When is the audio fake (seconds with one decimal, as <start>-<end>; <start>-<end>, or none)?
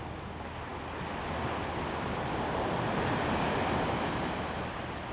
none